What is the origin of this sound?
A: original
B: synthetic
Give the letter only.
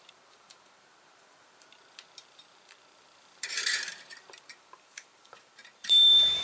B